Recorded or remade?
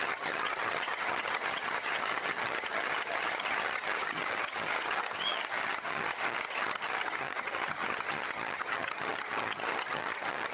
remade